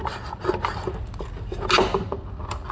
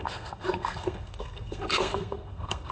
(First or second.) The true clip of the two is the first